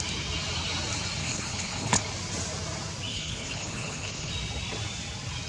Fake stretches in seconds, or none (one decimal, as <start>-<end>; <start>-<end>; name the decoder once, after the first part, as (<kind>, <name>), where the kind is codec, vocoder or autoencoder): 1.2-2.0 (codec, HILCodec); 3.1-4.3